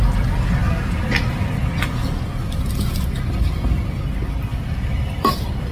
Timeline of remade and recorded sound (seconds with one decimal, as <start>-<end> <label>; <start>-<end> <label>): 0.0-4.5 recorded; 4.5-5.7 remade